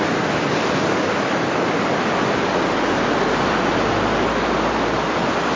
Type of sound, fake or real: real